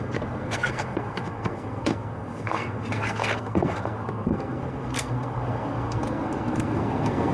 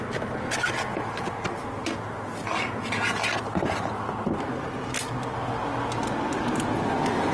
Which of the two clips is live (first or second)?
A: second